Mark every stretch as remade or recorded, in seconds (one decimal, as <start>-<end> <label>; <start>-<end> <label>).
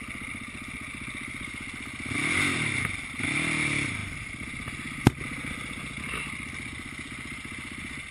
0.0-8.1 recorded